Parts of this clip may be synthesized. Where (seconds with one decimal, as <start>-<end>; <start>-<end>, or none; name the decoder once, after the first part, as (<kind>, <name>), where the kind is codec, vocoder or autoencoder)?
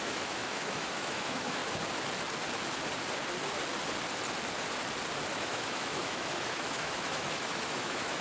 0.0-1.6 (autoencoder, DAC-VAE); 5.3-8.2